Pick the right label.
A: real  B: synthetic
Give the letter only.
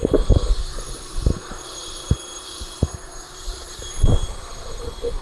B